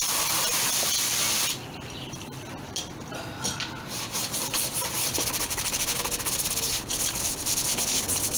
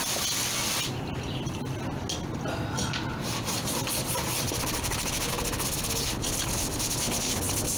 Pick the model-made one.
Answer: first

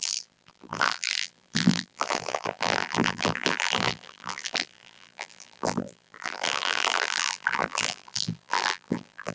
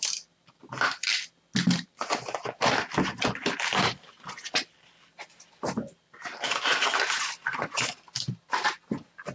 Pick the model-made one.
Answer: first